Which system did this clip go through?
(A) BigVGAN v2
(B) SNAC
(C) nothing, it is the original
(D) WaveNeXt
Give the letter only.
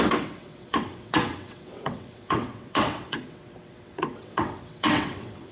D